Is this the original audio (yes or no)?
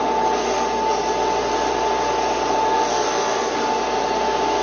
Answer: yes